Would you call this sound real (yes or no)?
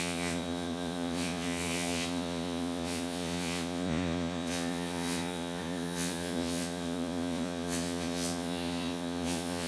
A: no